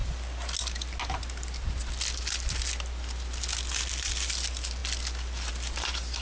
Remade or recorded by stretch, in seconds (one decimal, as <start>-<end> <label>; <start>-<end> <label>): 0.0-6.2 recorded